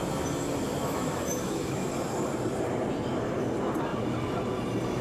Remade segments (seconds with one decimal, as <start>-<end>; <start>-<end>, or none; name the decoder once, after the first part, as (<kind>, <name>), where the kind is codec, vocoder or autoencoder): 0.8-1.9 (autoencoder, DAC-VAE)